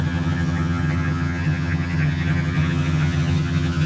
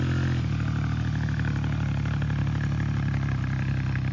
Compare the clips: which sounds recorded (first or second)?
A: second